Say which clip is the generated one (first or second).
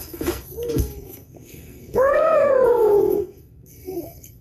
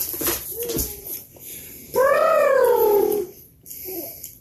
first